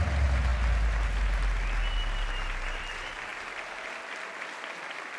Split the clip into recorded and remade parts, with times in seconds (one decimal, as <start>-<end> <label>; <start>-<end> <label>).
0.0-5.2 recorded